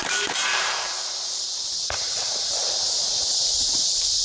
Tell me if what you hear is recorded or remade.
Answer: remade